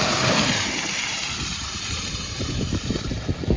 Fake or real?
fake